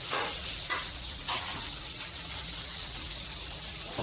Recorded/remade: remade